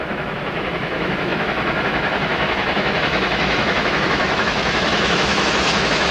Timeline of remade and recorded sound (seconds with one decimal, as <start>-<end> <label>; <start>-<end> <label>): 0.0-6.1 remade